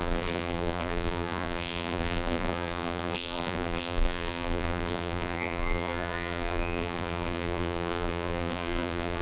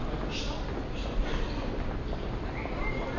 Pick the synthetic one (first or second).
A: first